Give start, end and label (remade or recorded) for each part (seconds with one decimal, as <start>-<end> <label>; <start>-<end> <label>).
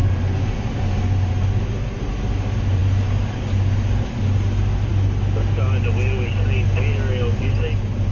0.0-8.1 recorded